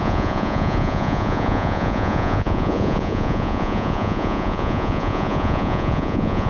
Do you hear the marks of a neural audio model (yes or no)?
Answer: yes